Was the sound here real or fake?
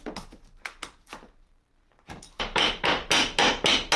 real